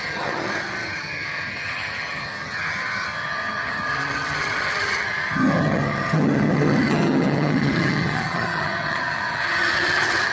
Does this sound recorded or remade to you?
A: remade